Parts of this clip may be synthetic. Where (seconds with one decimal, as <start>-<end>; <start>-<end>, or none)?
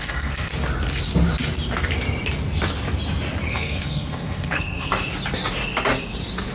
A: 0.0-0.5; 3.5-4.9